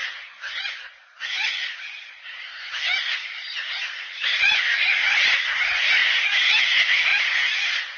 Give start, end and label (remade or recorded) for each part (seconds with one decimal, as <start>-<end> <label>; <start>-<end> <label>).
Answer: 0.0-8.0 recorded